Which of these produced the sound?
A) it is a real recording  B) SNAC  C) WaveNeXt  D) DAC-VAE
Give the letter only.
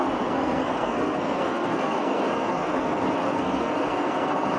B